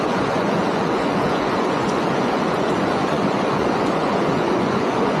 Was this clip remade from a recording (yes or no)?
yes